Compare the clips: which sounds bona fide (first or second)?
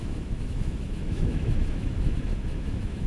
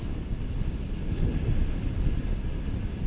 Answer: second